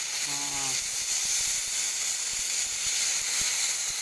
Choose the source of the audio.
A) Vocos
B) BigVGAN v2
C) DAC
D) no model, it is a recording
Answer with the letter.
D